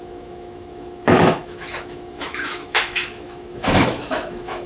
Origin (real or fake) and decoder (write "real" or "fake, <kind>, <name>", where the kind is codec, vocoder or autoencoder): fake, autoencoder, DAC-VAE